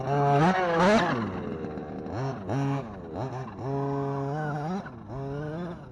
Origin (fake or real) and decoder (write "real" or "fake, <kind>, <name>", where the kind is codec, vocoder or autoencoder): real